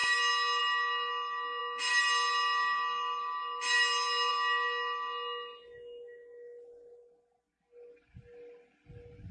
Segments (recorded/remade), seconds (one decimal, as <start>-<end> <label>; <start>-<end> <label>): 0.0-9.3 recorded